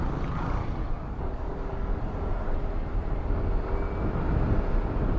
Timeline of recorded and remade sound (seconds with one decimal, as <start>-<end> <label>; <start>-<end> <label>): 0.0-0.8 recorded; 0.8-2.0 remade; 2.0-5.2 recorded